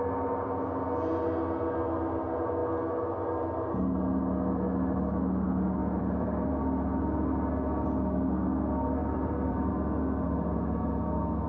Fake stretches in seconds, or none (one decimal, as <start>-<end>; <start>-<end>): 5.8-6.5; 9.0-9.7